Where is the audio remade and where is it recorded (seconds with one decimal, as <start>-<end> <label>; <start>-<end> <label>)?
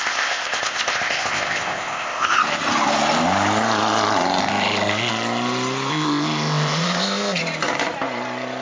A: 0.0-2.4 remade; 2.4-4.4 recorded; 4.4-5.1 remade; 5.1-5.9 recorded; 5.9-7.4 remade; 7.4-8.6 recorded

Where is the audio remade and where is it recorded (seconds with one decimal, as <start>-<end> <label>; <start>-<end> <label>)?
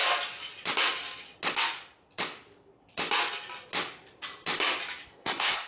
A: 0.0-5.1 recorded; 5.1-5.7 remade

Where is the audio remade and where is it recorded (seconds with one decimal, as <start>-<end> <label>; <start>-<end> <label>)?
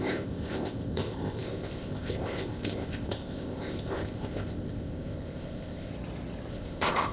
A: 0.0-5.9 remade; 5.9-6.5 recorded; 6.5-7.1 remade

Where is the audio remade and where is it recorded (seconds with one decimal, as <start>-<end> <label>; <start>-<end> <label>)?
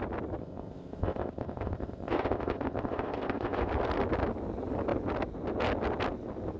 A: 0.0-0.4 recorded; 0.4-3.7 remade; 3.7-6.6 recorded